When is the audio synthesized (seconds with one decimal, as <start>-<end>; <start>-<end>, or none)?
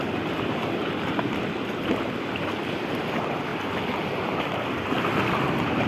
none